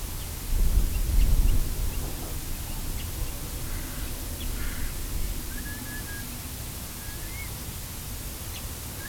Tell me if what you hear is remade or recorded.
recorded